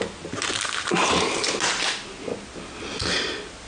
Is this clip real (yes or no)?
yes